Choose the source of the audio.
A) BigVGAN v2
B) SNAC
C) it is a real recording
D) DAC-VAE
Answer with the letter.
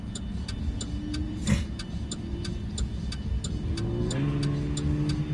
C